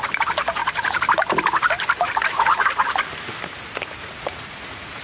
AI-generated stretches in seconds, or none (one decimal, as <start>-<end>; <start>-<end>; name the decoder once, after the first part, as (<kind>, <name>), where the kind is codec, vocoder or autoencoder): 4.0-5.0 (vocoder, Vocos)